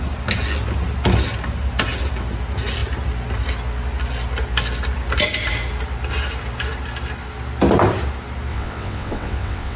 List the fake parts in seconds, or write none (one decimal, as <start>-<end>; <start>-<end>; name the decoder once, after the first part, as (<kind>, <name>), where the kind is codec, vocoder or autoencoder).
8.5-9.8 (vocoder, WaveNeXt)